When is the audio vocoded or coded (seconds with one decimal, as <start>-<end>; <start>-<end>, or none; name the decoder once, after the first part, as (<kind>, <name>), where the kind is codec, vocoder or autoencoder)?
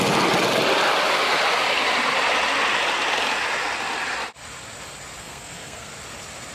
5.2-5.9 (codec, SNAC)